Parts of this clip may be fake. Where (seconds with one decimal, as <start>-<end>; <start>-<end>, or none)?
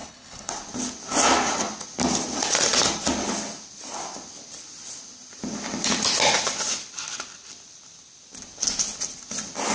0.0-0.5